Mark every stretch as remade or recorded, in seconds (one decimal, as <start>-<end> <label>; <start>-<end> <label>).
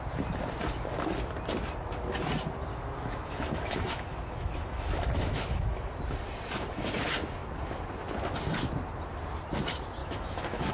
0.0-2.7 recorded; 2.7-5.8 remade; 5.8-10.0 recorded; 10.0-10.7 remade